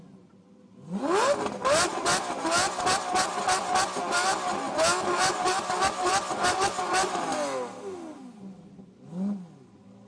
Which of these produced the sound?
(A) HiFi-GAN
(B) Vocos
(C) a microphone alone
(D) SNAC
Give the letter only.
C